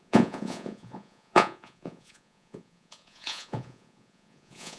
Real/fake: fake